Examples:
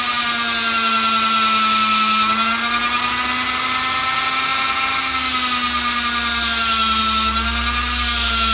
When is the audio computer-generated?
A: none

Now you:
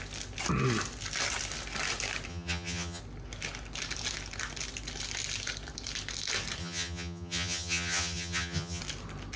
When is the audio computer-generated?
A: 2.3-3.0 (vocoder, HiFi-GAN); 6.6-8.8

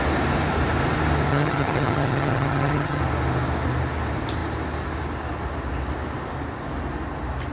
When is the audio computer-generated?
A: 1.3-3.0 (vocoder, HiFi-GAN)

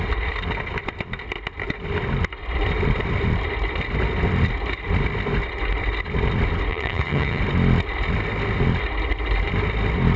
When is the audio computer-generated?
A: 6.7-7.4 (vocoder, HiFi-GAN)

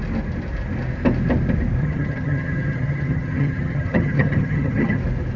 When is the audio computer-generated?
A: 1.8-5.0 (vocoder, HiFi-GAN)

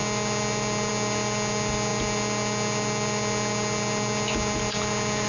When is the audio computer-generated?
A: none

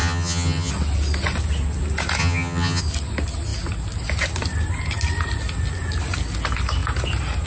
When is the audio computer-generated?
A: 0.0-0.7 (vocoder, HiFi-GAN); 2.2-2.8